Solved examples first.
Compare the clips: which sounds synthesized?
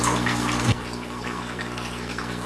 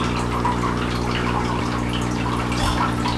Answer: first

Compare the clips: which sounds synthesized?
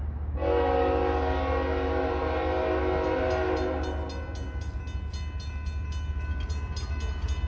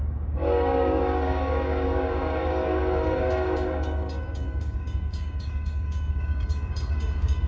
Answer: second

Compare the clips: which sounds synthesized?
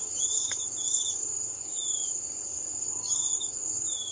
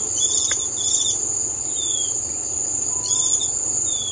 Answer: first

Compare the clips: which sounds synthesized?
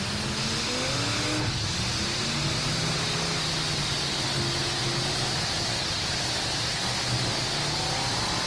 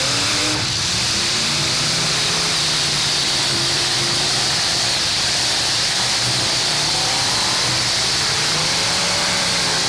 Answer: second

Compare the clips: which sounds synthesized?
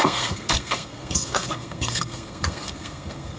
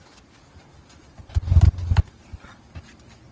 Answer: first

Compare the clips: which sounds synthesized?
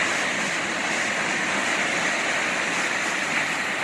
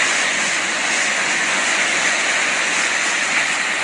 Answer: second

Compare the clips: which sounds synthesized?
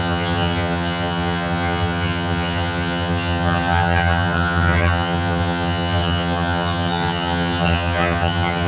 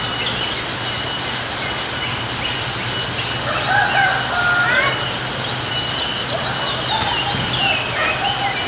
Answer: first